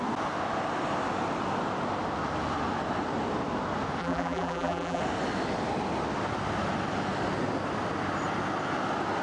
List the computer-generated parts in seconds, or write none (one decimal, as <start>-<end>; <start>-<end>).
4.0-5.0